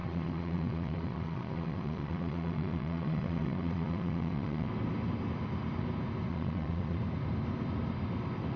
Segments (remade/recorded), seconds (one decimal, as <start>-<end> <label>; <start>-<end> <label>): 0.0-4.7 remade; 4.7-6.3 recorded; 6.3-7.0 remade; 7.0-8.6 recorded